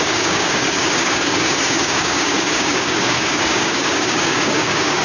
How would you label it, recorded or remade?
remade